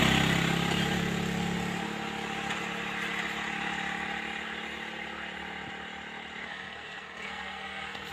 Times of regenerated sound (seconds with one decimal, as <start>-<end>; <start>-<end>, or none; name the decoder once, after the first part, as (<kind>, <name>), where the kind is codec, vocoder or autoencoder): 6.4-8.1 (codec, SNAC)